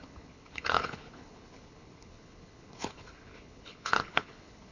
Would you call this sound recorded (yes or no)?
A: no